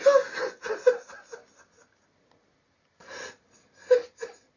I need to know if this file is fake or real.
real